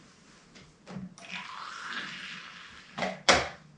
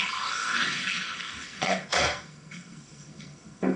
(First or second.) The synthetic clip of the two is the second